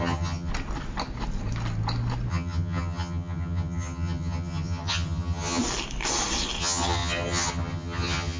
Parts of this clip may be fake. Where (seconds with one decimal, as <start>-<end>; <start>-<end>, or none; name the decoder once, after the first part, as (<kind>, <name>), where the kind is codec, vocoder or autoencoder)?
0.0-0.5 (vocoder, HiFi-GAN); 2.3-5.6; 6.6-8.4